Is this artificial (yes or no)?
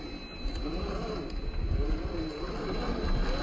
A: no